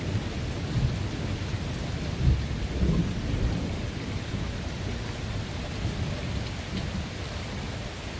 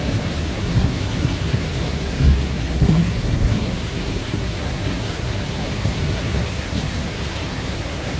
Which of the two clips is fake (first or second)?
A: second